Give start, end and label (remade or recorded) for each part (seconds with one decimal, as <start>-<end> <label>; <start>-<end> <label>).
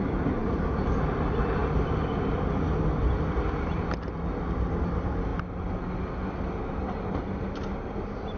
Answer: 0.0-8.4 recorded